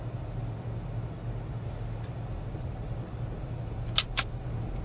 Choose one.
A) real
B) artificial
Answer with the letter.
A